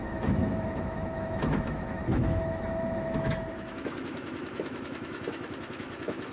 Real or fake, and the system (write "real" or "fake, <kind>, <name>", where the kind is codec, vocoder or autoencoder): fake, autoencoder, DAC-VAE